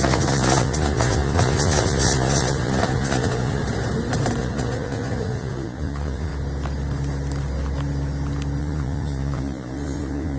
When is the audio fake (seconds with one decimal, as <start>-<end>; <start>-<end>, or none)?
0.0-3.6; 4.4-6.3; 8.6-10.4